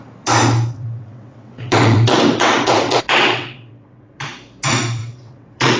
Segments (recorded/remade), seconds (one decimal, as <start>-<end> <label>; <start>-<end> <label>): 0.0-0.7 recorded; 0.7-4.2 remade; 4.2-5.0 recorded; 5.0-5.8 remade